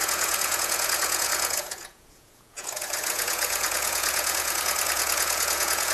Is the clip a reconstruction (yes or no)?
yes